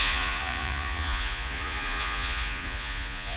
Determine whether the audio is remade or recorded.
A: remade